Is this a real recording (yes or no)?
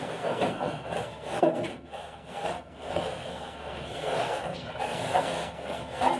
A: no